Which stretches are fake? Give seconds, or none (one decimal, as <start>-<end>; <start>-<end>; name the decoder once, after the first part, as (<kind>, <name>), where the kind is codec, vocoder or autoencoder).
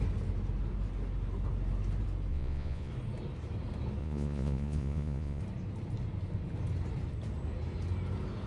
2.3-2.9 (vocoder, Vocos); 4.0-5.4